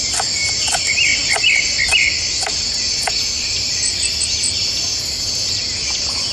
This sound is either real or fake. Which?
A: real